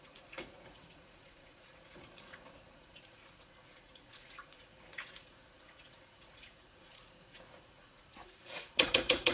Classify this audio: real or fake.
fake